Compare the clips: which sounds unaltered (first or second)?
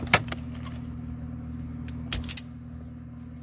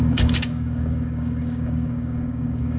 first